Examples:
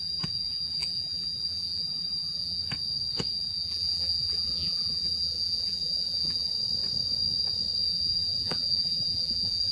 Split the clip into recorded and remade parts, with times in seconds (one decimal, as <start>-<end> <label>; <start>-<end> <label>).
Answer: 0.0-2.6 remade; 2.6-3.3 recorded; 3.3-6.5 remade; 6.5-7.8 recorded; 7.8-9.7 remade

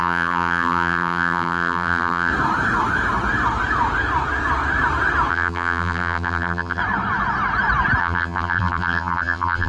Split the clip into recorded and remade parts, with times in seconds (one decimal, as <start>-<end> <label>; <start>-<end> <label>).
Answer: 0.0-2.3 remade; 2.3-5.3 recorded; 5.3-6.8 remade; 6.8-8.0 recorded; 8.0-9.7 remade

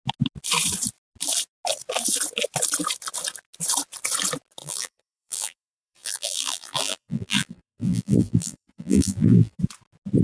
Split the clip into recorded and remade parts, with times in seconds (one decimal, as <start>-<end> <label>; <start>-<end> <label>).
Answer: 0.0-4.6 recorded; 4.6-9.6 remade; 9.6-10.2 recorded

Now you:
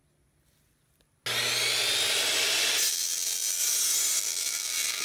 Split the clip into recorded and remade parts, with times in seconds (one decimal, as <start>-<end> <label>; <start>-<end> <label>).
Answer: 0.0-2.9 recorded; 2.9-3.6 remade; 3.6-4.2 recorded; 4.2-5.0 remade

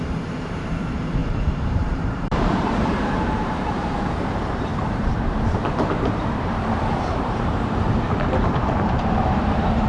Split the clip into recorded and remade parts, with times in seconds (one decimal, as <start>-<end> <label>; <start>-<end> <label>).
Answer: 0.0-9.9 remade

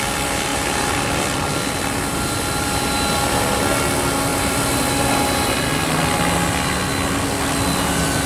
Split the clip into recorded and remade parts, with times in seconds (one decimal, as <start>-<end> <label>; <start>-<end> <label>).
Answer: 0.0-8.3 recorded